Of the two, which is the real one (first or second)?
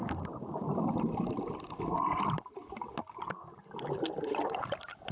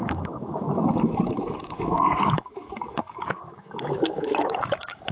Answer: first